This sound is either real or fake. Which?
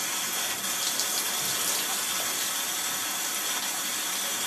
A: real